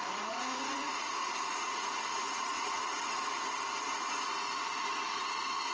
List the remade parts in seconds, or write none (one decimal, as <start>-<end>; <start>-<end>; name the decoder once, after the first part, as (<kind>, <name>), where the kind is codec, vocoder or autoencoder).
0.0-3.2 (vocoder, Vocos); 5.0-5.7